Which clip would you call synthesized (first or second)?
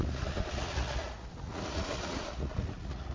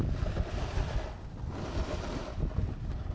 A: first